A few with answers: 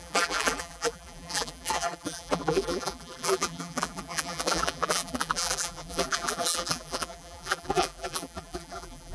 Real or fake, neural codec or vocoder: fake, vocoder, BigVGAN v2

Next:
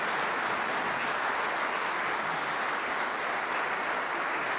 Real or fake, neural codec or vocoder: real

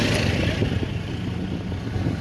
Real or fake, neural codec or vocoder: real